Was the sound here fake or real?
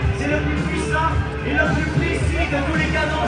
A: real